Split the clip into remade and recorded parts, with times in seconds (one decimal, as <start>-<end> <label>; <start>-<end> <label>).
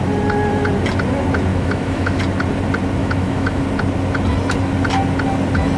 0.0-1.5 recorded; 1.5-2.2 remade; 2.2-3.0 recorded; 3.0-3.6 remade; 3.6-5.8 recorded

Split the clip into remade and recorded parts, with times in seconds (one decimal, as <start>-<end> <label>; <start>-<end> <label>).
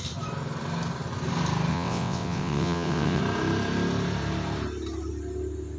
0.0-1.7 recorded; 1.7-3.2 remade; 3.2-5.8 recorded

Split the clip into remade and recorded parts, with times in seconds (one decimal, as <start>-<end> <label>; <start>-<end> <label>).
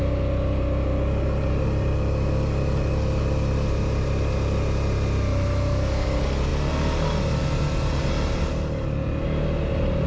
0.0-10.1 recorded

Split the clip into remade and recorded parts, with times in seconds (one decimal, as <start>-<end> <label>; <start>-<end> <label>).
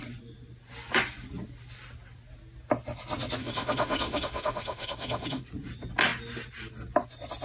0.0-3.4 recorded; 3.4-5.4 remade; 5.4-7.4 recorded